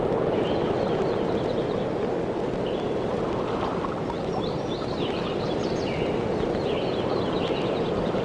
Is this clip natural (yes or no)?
yes